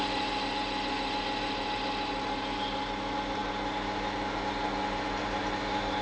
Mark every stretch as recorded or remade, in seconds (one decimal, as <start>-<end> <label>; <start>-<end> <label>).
0.0-6.0 recorded